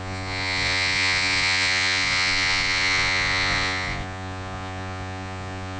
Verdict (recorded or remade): remade